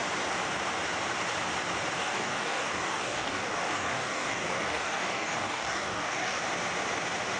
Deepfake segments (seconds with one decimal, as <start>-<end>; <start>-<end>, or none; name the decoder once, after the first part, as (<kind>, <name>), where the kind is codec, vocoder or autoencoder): 2.0-6.4 (codec, DAC)